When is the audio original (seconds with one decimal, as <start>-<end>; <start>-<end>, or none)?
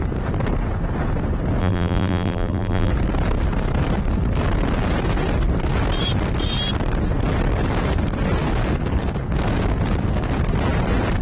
0.0-1.6; 2.9-11.2